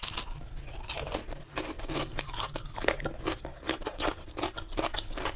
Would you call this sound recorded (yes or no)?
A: yes